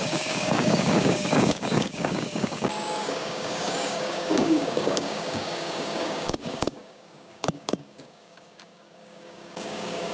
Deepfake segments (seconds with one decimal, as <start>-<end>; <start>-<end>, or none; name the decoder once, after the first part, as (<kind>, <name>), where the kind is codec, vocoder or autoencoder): 0.0-10.1 (codec, DAC)